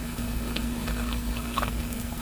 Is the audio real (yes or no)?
no